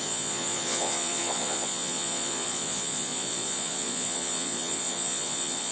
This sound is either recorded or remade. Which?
remade